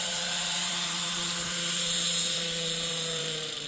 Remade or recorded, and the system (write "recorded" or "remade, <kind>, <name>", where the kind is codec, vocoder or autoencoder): remade, vocoder, BigVGAN v2